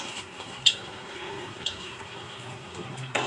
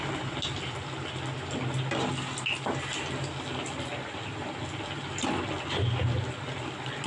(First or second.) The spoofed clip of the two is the first